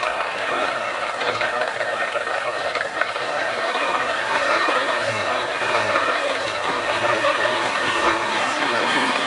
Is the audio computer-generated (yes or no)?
yes